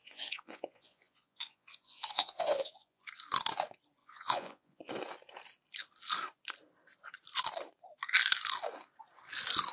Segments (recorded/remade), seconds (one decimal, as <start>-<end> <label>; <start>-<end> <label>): 0.0-3.1 remade; 3.1-4.0 recorded; 4.0-4.9 remade; 4.9-9.7 recorded